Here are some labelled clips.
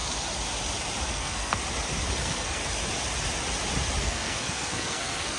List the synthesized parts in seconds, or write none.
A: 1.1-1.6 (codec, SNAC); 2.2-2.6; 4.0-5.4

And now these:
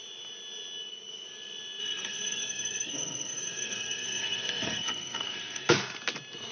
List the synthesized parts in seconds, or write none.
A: 1.8-5.7 (codec, SNAC)

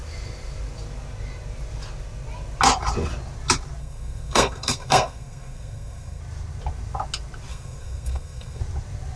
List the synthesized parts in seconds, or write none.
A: 3.8-6.2 (codec, SNAC); 7.5-8.6